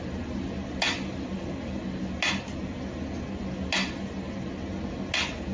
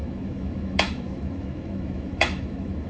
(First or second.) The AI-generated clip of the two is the second